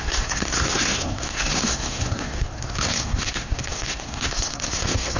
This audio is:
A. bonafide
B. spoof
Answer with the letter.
B